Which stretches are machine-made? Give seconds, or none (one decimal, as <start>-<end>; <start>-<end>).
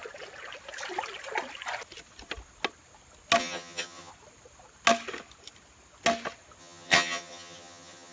3.4-4.1; 6.6-8.1